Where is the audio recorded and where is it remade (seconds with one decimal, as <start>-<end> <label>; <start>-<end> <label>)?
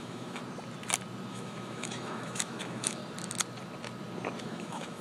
0.0-0.4 remade; 0.4-1.3 recorded; 1.3-3.0 remade; 3.0-4.4 recorded; 4.4-5.0 remade